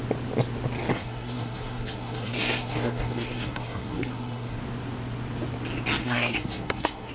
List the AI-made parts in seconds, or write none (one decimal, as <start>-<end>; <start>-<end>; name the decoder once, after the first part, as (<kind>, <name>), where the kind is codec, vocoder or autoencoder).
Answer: 0.9-4.6 (codec, SNAC); 6.0-7.1